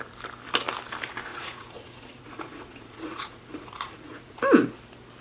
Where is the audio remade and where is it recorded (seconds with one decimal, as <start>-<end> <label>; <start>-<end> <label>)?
0.0-1.3 recorded; 1.3-4.4 remade; 4.4-5.2 recorded